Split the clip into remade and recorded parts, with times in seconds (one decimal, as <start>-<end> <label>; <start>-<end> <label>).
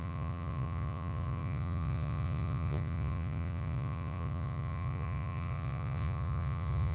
0.0-6.9 remade